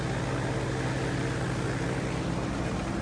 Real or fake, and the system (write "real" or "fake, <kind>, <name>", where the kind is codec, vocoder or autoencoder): real